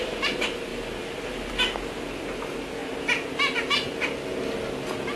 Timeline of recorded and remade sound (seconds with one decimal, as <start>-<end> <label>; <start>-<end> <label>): 0.0-5.2 recorded